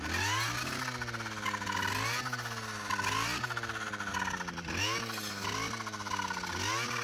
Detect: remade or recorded recorded